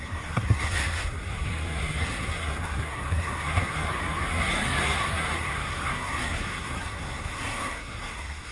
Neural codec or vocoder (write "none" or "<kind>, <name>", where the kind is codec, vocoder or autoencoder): codec, SNAC